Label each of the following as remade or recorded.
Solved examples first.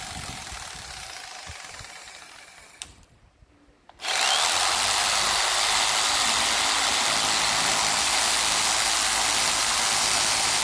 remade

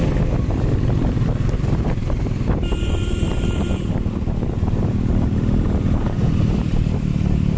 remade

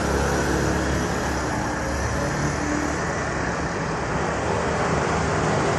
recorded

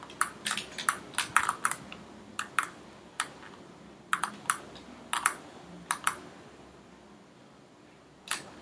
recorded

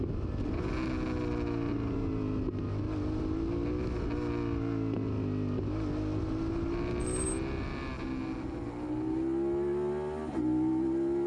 recorded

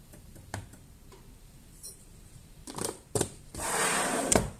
remade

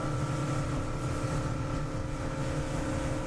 recorded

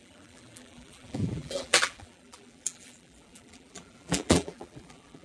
remade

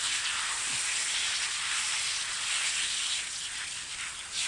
recorded